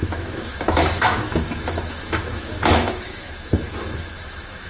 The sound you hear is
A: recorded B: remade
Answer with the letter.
B